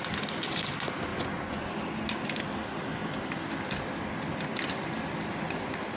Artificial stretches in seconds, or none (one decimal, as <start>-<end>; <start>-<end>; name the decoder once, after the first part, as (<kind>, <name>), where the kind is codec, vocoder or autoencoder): 1.1-1.7 (vocoder, Vocos)